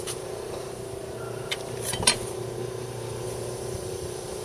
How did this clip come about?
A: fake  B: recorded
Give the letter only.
A